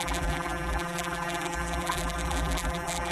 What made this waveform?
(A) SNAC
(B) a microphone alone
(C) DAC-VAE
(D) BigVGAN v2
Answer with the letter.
D